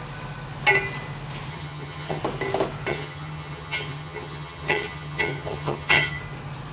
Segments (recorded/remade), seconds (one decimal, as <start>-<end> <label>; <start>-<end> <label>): 0.0-1.5 recorded; 1.5-2.2 remade; 2.2-2.9 recorded; 2.9-6.2 remade; 6.2-6.7 recorded